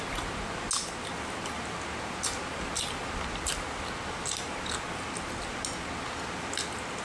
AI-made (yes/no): no